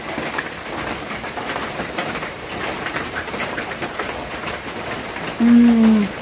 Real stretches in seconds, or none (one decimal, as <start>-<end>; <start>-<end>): 0.0-1.6; 5.3-6.2